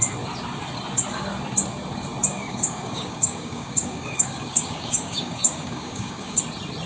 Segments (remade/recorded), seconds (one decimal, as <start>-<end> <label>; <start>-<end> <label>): 0.0-2.3 recorded; 2.3-6.4 remade; 6.4-6.9 recorded